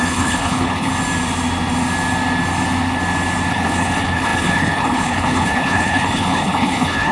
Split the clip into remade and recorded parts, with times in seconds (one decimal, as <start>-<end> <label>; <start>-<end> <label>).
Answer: 0.0-0.9 remade; 0.9-3.5 recorded; 3.5-7.1 remade